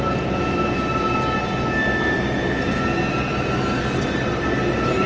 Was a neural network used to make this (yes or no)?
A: no